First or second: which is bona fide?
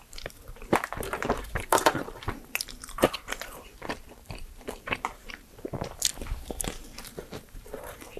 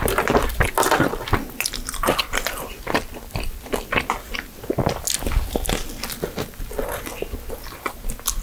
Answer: second